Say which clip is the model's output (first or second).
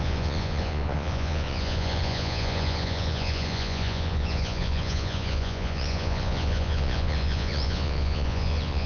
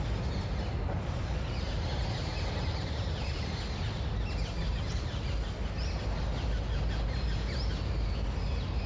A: first